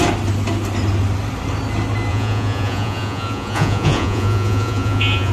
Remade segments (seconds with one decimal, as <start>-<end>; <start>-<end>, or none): 2.1-5.3